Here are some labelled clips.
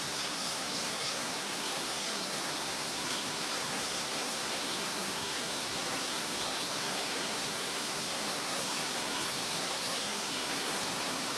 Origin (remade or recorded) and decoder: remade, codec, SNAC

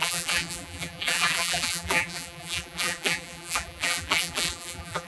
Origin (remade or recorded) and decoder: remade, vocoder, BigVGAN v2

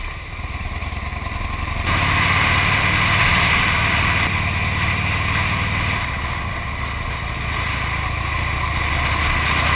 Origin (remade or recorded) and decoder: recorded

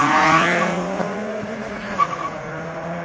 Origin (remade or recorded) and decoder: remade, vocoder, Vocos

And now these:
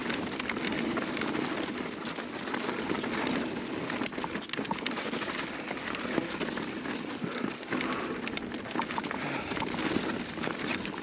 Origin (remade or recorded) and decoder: recorded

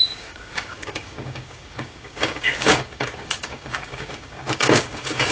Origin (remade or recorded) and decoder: remade, codec, DAC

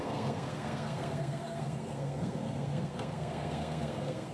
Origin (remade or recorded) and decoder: remade, codec, SNAC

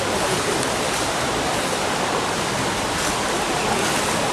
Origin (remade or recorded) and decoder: recorded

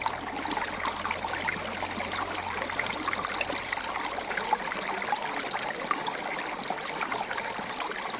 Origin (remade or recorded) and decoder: recorded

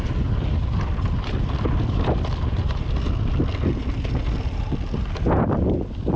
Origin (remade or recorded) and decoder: recorded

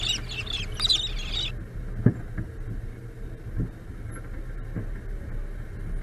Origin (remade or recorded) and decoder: recorded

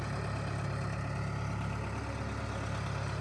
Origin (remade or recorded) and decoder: recorded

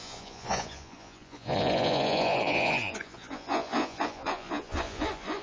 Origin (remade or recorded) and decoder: remade, vocoder, Vocos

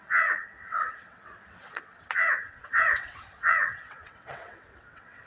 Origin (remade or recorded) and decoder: remade, vocoder, WaveNeXt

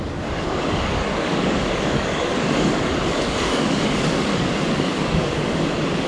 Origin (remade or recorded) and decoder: remade, codec, DAC